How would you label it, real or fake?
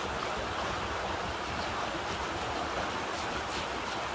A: real